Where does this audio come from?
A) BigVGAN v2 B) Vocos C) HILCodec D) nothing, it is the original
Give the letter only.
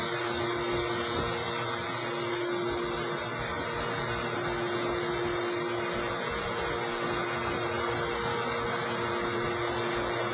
D